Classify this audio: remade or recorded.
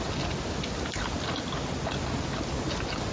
recorded